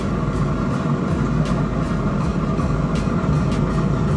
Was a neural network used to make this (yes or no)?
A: no